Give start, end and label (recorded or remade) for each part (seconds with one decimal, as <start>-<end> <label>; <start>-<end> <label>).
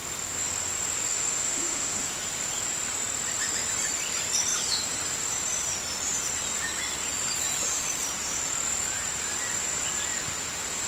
0.0-1.1 recorded; 1.1-2.1 remade; 2.1-10.9 recorded